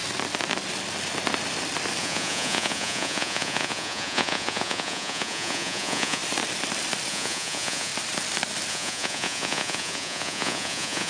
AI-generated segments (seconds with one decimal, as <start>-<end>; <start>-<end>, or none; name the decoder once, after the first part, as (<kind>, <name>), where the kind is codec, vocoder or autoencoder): 2.0-6.2 (vocoder, Vocos); 7.1-7.9; 8.7-11.1